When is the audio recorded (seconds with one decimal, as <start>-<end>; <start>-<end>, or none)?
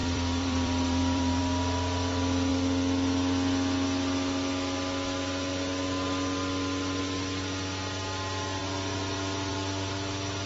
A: 1.4-10.5